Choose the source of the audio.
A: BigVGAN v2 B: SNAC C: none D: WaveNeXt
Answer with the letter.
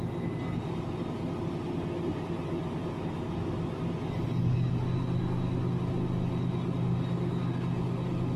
C